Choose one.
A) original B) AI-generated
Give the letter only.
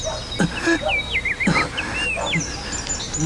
A